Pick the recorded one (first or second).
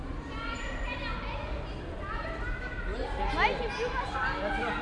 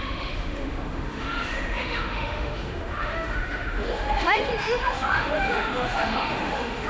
first